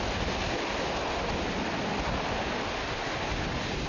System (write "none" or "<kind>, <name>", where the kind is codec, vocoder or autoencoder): none